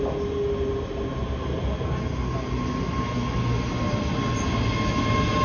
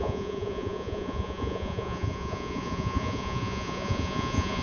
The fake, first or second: second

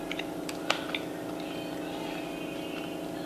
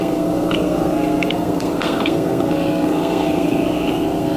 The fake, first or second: second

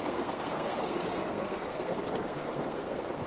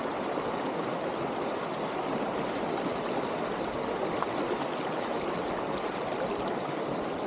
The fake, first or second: first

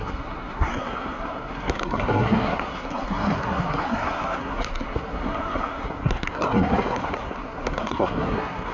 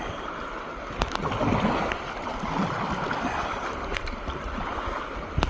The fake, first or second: first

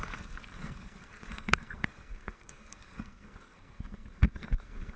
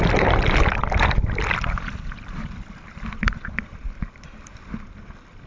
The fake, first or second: first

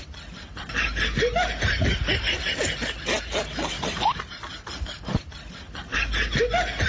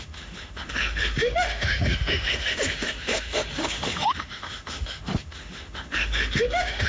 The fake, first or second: second